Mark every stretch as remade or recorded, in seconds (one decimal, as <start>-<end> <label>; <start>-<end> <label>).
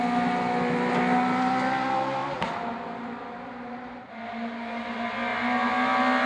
0.0-2.2 recorded; 2.2-4.1 remade; 4.1-6.3 recorded